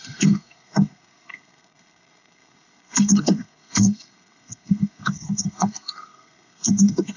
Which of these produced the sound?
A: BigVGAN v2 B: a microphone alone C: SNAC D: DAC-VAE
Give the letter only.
C